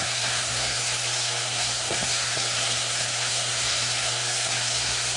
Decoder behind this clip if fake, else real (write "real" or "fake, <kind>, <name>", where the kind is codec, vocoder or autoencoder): fake, codec, SNAC